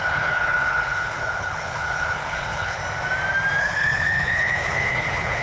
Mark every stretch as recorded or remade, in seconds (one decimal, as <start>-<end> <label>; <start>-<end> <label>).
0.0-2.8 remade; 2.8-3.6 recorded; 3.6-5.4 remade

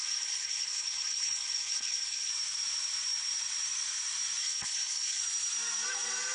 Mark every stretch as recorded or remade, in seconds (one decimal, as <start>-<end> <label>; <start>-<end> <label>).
0.0-2.3 remade; 2.3-4.4 recorded; 4.4-5.2 remade; 5.2-6.3 recorded

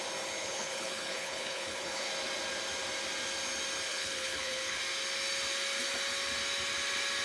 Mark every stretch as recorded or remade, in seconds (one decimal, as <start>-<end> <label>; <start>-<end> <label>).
0.0-0.4 recorded; 0.4-2.1 remade; 2.1-3.9 recorded; 3.9-4.8 remade; 4.8-7.2 recorded

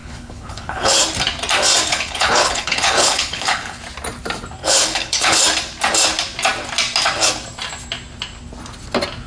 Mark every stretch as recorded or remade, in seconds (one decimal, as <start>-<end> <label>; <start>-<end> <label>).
0.0-1.0 remade; 1.0-1.9 recorded; 1.9-3.8 remade; 3.8-4.6 recorded; 4.6-5.4 remade; 5.4-9.3 recorded